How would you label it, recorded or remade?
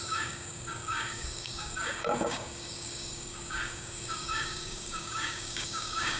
remade